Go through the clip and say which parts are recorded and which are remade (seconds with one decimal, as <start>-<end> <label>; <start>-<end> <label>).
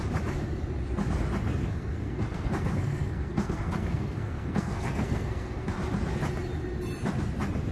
0.0-1.6 recorded; 1.6-5.7 remade; 5.7-7.7 recorded